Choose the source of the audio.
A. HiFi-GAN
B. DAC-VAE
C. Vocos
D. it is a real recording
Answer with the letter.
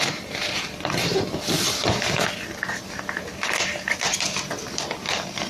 D